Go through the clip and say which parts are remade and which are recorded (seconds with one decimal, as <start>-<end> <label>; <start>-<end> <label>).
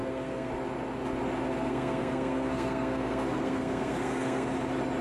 0.0-0.5 remade; 0.5-1.5 recorded; 1.5-4.5 remade; 4.5-5.0 recorded